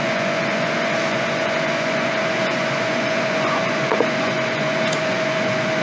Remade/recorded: remade